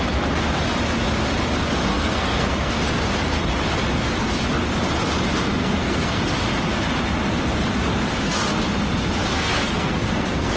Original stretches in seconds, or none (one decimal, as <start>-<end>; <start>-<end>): 0.0-1.9; 2.7-5.6; 6.2-9.2